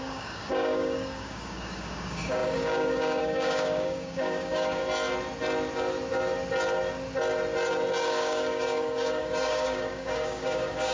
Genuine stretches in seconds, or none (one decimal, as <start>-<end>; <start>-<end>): 4.8-8.1

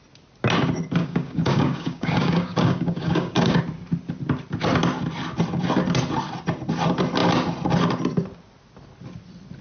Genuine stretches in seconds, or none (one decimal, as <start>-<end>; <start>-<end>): 0.0-1.0; 3.6-9.6